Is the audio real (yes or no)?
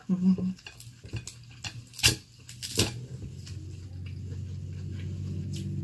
yes